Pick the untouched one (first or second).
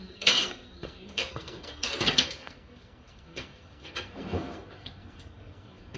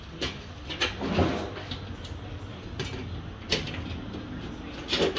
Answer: second